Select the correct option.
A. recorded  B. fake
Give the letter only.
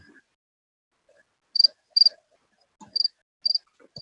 A